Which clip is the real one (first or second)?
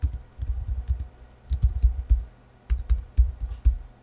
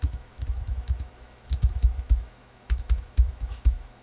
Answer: first